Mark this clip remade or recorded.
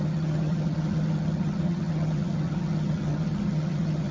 remade